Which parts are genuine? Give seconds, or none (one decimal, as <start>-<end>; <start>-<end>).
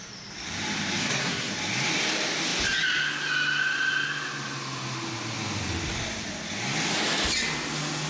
0.0-1.0; 1.5-8.1